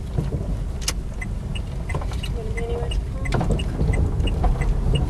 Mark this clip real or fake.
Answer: real